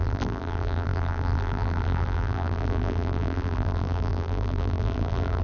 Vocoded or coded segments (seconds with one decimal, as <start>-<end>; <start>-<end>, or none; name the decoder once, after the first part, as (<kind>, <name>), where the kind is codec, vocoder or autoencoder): 0.0-5.4 (vocoder, BigVGAN v2)